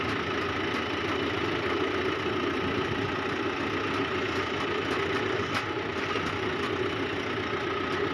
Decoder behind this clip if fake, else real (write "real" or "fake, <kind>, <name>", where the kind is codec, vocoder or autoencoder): real